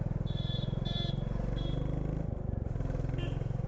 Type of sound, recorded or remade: recorded